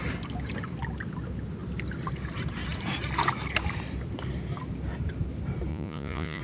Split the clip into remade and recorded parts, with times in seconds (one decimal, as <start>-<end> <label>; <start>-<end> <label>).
0.0-5.7 recorded; 5.7-6.4 remade